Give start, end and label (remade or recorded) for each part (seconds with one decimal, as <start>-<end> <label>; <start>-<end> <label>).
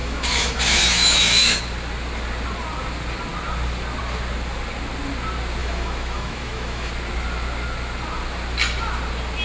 0.0-1.6 remade; 1.6-5.6 recorded; 5.6-6.9 remade; 6.9-9.4 recorded